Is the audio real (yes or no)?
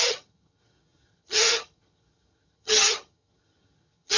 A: no